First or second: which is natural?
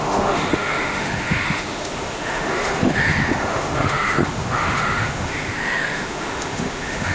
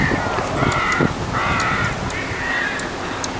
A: second